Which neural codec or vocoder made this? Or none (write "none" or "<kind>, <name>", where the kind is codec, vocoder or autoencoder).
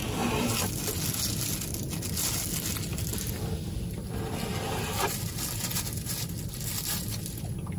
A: none